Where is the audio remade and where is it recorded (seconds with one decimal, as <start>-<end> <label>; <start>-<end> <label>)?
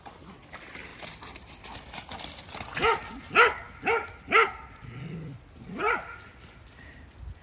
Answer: 0.0-7.4 recorded